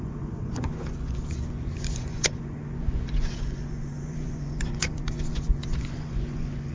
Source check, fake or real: fake